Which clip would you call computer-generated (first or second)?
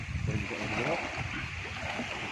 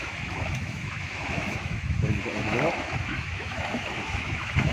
second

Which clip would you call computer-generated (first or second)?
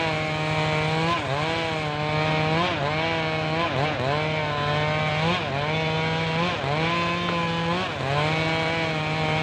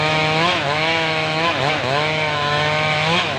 second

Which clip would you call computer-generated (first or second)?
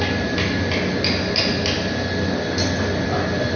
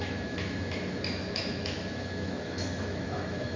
second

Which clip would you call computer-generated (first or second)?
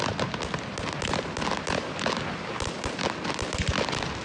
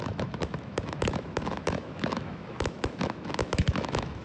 second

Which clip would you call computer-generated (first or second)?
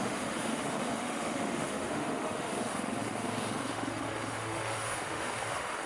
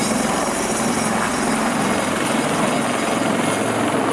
first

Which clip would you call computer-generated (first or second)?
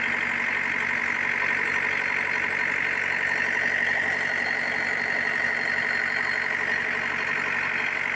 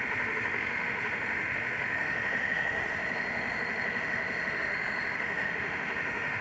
second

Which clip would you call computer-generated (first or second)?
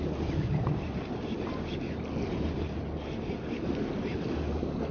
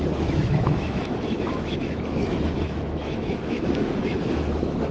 second